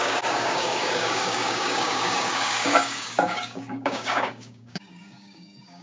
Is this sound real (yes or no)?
no